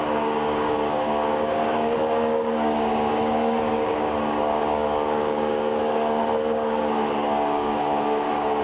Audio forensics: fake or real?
fake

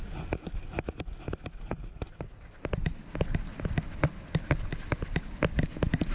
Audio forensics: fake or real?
real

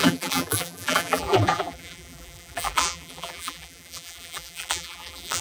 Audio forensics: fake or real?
fake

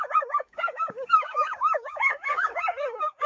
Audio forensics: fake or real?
fake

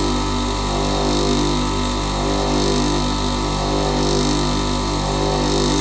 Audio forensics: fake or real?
real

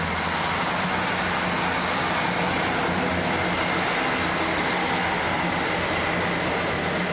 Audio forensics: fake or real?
real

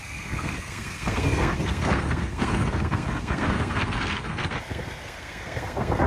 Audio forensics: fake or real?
fake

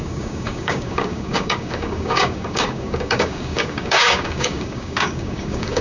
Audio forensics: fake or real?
fake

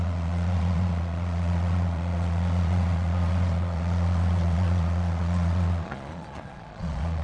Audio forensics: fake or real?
fake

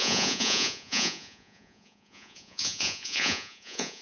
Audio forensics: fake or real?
fake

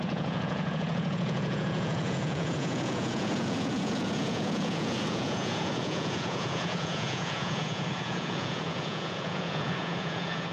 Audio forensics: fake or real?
fake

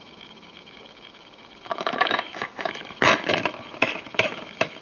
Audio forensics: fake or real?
fake